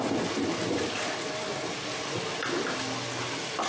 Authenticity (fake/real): real